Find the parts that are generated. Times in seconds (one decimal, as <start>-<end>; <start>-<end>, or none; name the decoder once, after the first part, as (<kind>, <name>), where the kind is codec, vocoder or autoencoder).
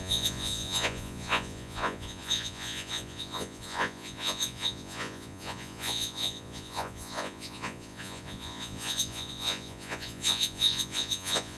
0.0-11.6 (vocoder, Vocos)